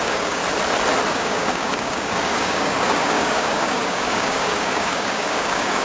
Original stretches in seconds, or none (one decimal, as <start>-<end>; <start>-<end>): 0.4-1.1